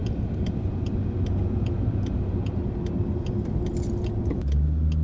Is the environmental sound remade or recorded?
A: recorded